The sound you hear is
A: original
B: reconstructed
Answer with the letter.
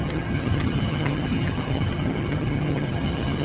B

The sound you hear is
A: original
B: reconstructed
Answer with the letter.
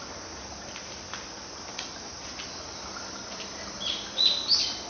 A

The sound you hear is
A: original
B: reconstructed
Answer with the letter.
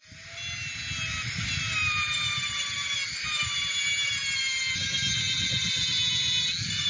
A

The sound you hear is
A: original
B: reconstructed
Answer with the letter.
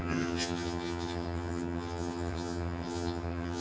B